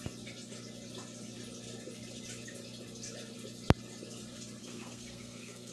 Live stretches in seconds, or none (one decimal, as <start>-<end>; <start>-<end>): 0.0-4.6